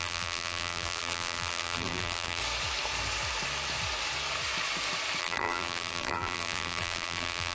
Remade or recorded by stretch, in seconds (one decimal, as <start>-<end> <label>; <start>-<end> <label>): 0.0-2.4 remade; 2.4-5.2 recorded; 5.2-7.5 remade